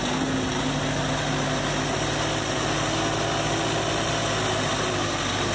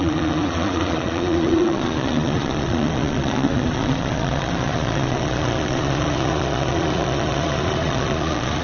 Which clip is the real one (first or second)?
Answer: first